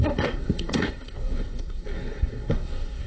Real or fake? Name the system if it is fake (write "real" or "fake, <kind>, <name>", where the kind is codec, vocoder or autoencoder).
fake, codec, SNAC